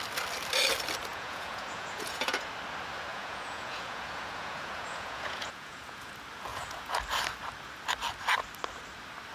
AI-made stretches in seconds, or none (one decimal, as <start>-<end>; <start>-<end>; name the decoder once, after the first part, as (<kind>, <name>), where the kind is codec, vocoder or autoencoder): 1.1-2.5 (vocoder, Vocos); 3.1-6.1; 6.5-7.0